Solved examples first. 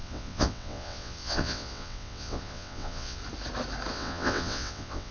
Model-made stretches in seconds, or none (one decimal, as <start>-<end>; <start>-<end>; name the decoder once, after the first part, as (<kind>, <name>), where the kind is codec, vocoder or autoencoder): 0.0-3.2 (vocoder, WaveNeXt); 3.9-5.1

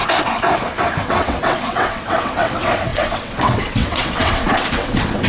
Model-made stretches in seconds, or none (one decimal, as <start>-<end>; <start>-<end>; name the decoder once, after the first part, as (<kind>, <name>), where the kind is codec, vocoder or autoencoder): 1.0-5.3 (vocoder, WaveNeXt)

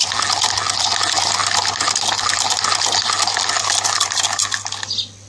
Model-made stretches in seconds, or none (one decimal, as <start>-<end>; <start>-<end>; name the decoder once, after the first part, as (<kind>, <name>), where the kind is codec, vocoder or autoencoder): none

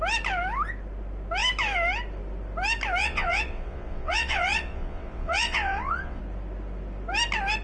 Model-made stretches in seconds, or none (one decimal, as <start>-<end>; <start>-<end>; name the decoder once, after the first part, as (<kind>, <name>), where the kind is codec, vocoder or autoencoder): 3.0-6.2 (vocoder, WaveNeXt)

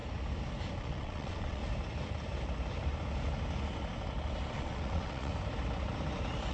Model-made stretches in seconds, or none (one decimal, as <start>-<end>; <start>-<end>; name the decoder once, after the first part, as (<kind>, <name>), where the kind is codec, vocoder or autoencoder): 0.8-1.6 (vocoder, WaveNeXt); 4.5-5.3

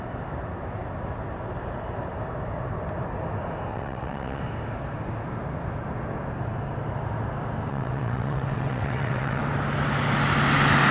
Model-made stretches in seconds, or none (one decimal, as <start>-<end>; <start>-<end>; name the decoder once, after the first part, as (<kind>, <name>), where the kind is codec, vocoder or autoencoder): 3.7-4.4 (vocoder, WaveNeXt); 7.7-9.4